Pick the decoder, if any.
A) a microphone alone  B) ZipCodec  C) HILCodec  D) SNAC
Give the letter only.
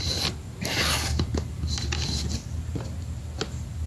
A